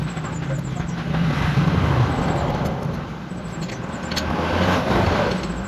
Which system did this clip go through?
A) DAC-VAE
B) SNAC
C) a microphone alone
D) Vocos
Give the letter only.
C